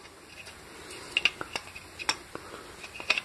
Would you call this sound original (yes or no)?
yes